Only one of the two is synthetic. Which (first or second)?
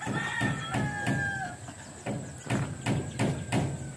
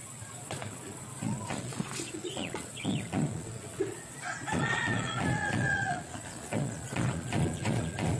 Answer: second